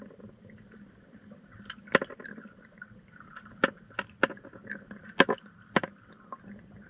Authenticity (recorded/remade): recorded